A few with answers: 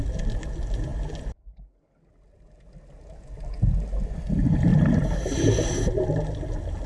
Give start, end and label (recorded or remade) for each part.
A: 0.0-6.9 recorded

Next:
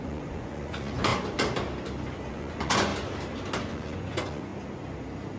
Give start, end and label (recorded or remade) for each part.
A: 0.0-1.1 remade; 1.1-2.3 recorded; 2.3-2.9 remade; 2.9-3.6 recorded; 3.6-4.5 remade; 4.5-5.4 recorded

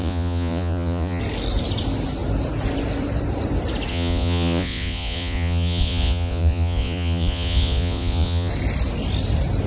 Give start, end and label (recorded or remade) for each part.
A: 0.0-1.2 remade; 1.2-3.9 recorded; 3.9-8.5 remade; 8.5-9.7 recorded

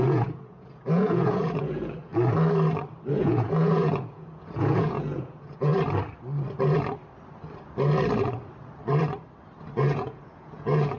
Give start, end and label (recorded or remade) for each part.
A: 0.0-2.1 remade; 2.1-3.1 recorded; 3.1-5.7 remade; 5.7-9.8 recorded; 9.8-11.0 remade

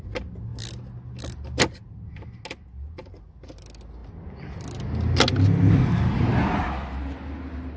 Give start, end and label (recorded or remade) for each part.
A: 0.0-7.8 recorded

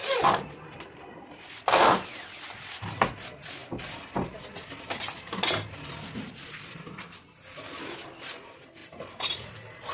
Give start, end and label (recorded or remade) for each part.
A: 0.0-9.9 recorded